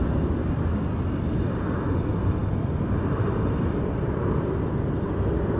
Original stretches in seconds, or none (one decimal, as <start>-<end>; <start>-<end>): 0.0-5.6